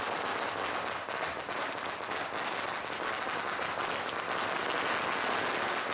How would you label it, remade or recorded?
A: recorded